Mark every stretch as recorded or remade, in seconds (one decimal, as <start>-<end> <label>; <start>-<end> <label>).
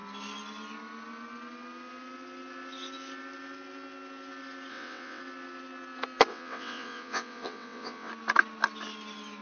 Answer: 0.0-4.7 recorded; 4.7-5.2 remade; 5.2-6.3 recorded; 6.3-8.1 remade; 8.1-9.4 recorded